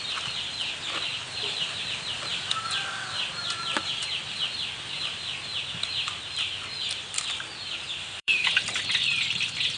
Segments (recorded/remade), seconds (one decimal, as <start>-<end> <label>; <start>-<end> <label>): 0.0-8.0 recorded; 8.0-8.5 remade; 8.5-9.8 recorded